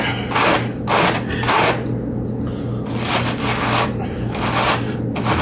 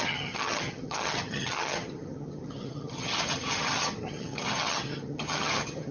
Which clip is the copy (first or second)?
second